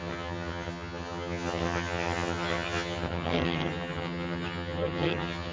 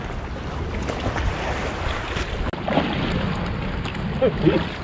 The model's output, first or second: first